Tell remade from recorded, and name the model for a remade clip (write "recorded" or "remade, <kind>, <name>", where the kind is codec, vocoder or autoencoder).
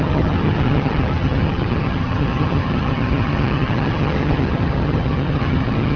remade, vocoder, HiFi-GAN